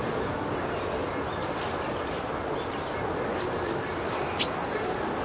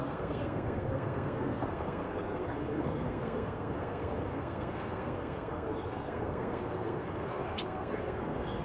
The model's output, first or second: second